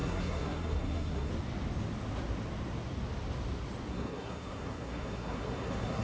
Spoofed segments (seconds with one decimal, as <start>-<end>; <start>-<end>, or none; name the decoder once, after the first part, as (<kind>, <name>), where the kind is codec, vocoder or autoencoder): 0.0-1.3 (codec, SNAC); 3.9-6.0